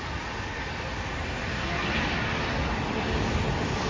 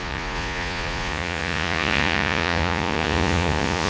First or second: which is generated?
second